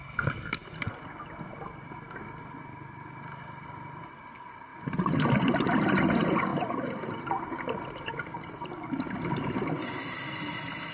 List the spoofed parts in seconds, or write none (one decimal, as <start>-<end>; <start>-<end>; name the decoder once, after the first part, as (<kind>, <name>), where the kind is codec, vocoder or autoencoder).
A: 6.5-8.5 (vocoder, BigVGAN v2)